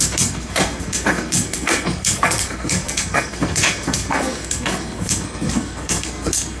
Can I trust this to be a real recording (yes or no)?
no